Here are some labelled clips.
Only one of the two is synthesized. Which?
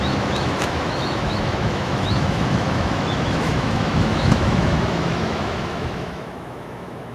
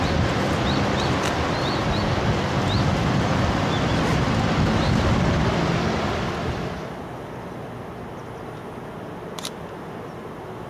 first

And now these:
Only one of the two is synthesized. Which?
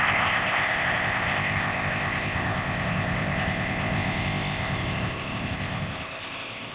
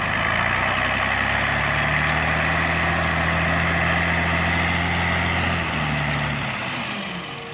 first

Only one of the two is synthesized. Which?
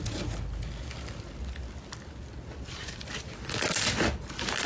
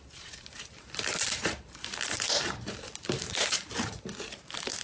second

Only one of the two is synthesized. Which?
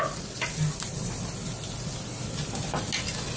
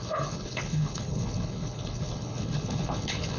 second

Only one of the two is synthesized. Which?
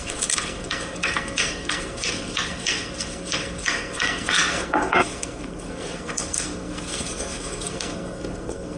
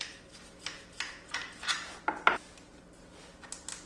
first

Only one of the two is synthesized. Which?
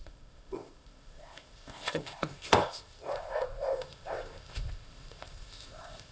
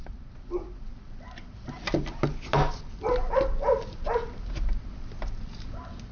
first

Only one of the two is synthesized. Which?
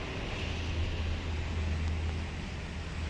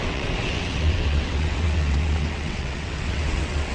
second